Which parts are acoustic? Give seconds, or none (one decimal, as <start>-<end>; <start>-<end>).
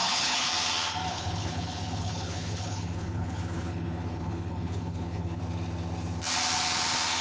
0.5-1.1; 5.4-7.2